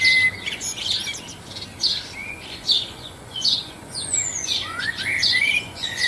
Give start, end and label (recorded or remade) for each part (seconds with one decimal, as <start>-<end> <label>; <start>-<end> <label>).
0.0-0.4 recorded; 0.4-0.9 remade; 0.9-2.2 recorded; 2.2-6.1 remade